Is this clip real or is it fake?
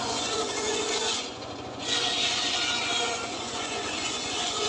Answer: fake